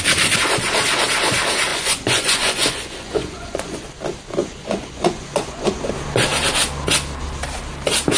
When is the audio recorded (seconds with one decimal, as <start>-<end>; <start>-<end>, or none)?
0.0-1.7; 3.8-4.4; 5.8-8.2